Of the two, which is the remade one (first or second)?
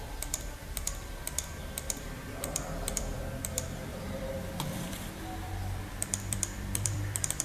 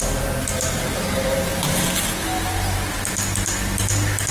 first